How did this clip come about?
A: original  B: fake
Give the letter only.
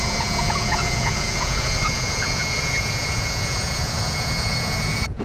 B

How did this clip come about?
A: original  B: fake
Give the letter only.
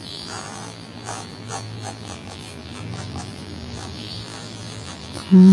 B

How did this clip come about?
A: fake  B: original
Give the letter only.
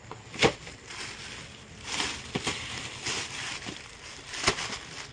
B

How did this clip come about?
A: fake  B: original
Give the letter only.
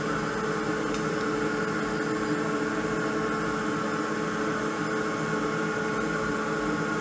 B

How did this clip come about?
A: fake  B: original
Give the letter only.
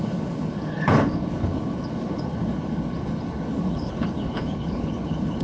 A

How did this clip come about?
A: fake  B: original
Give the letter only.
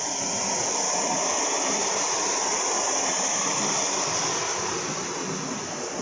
B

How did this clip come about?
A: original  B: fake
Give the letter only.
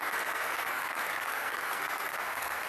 B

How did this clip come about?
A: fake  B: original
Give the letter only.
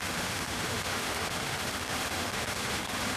A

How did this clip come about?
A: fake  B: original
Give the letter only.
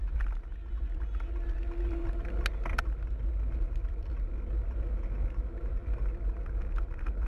B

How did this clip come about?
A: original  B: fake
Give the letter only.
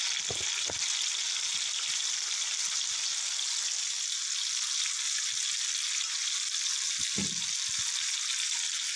A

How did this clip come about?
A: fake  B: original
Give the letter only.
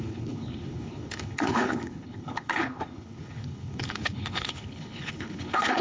A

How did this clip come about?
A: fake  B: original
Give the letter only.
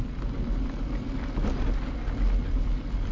B